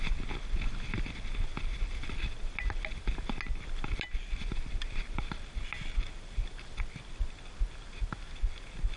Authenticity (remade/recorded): recorded